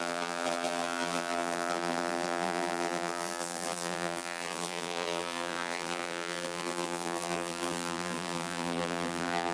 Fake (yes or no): yes